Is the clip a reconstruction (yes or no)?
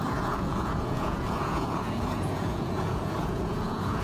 yes